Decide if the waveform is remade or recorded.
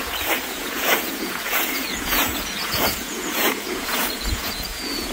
remade